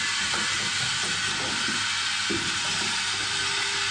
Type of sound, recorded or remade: recorded